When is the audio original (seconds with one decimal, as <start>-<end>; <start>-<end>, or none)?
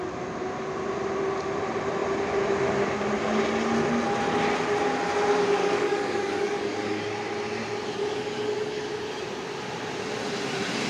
0.0-5.6; 7.0-8.0; 9.0-10.9